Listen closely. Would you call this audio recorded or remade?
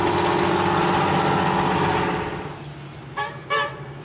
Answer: recorded